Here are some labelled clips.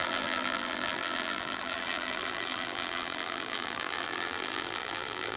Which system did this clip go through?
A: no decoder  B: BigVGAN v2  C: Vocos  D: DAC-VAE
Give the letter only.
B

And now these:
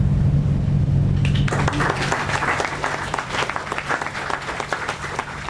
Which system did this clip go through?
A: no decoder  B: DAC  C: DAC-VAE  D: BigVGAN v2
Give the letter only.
D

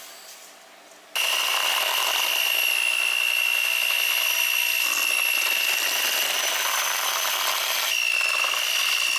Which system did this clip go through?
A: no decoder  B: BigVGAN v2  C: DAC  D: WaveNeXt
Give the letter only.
A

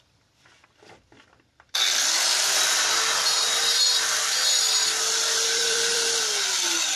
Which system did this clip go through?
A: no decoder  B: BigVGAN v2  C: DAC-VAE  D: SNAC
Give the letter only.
B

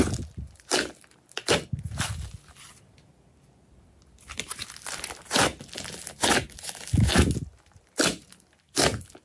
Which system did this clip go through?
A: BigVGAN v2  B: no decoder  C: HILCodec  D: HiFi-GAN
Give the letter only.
B